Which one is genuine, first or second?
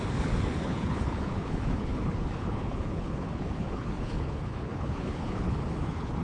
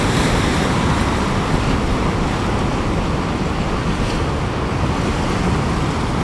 second